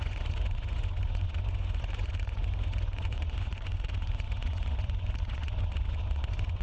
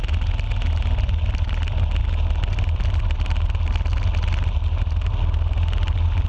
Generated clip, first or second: first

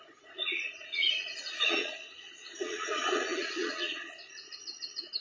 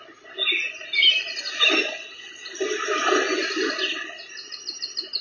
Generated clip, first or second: first